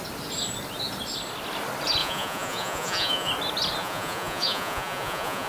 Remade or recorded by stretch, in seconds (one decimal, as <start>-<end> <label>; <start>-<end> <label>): 0.0-2.0 recorded; 2.0-3.3 remade; 3.3-3.8 recorded; 3.8-5.5 remade